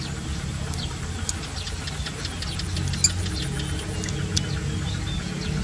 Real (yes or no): yes